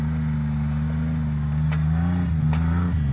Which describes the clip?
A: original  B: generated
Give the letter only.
A